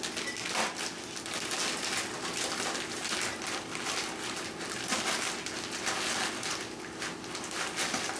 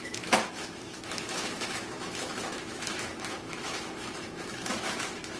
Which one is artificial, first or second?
second